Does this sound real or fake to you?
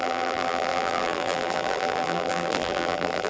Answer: fake